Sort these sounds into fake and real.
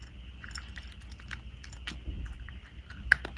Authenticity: real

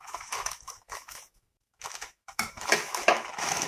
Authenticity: fake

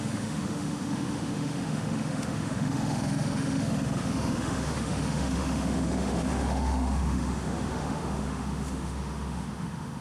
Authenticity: fake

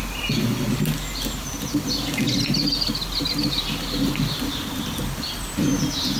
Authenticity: real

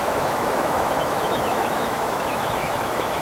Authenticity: fake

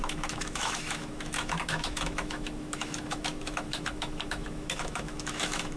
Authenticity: fake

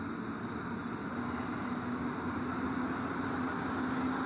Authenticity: real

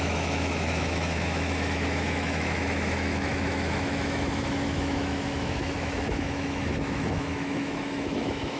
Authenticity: fake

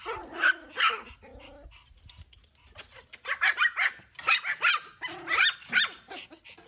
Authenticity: real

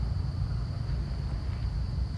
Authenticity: real